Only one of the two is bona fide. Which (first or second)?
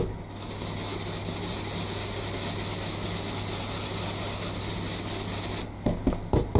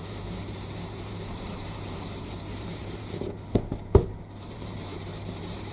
first